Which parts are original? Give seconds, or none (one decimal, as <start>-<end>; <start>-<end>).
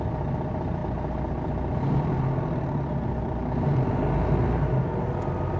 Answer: 0.0-5.6